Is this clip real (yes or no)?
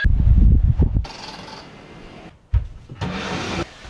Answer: yes